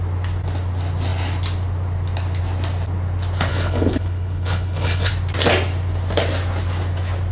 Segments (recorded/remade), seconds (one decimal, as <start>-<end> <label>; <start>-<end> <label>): 0.0-3.5 recorded; 3.5-5.1 remade; 5.1-7.3 recorded